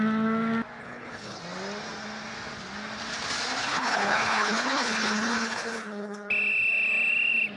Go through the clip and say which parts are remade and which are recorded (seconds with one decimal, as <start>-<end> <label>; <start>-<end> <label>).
0.0-0.8 recorded; 0.8-1.4 remade; 1.4-3.6 recorded; 3.6-6.3 remade; 6.3-7.6 recorded